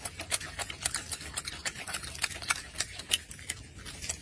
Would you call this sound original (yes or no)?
yes